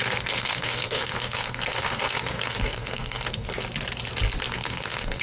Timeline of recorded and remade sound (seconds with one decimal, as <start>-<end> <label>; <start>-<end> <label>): 0.0-3.5 remade; 3.5-4.5 recorded; 4.5-5.2 remade